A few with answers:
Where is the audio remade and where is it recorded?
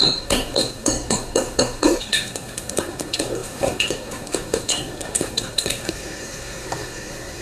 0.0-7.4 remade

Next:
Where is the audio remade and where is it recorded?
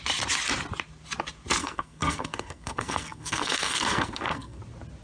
0.0-1.6 recorded; 1.6-4.6 remade; 4.6-5.0 recorded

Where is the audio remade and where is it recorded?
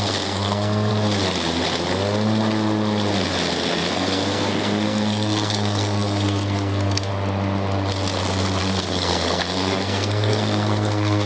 0.0-0.9 remade; 0.9-3.9 recorded; 3.9-7.1 remade; 7.1-8.6 recorded; 8.6-11.3 remade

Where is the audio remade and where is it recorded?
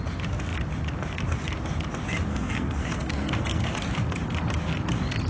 0.0-2.3 recorded; 2.3-3.7 remade; 3.7-5.3 recorded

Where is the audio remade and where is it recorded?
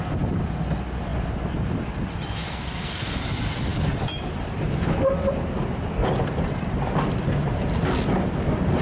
0.0-2.5 recorded; 2.5-3.2 remade; 3.2-8.8 recorded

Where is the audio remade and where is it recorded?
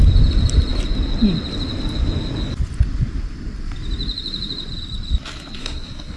0.0-5.6 recorded; 5.6-6.2 remade